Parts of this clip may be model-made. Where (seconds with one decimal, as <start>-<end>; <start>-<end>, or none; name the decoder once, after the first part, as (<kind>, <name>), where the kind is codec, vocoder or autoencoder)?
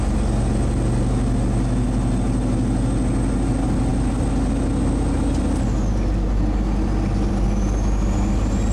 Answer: none